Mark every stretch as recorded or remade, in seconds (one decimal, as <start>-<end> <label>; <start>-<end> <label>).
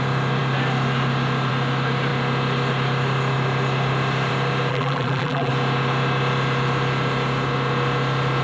0.0-4.7 recorded; 4.7-5.5 remade; 5.5-8.4 recorded